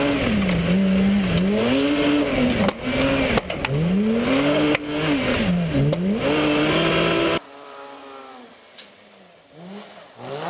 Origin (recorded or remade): recorded